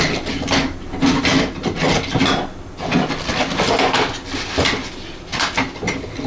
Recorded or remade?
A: recorded